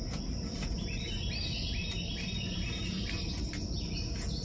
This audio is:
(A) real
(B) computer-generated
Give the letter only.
A